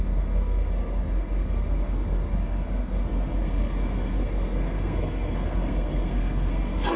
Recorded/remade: remade